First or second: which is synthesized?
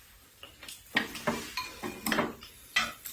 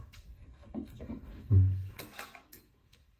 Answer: second